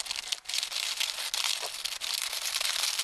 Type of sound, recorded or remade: recorded